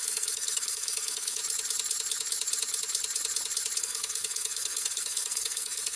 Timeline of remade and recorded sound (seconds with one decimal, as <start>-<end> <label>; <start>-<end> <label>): 0.0-1.4 remade; 1.4-3.8 recorded; 3.8-6.0 remade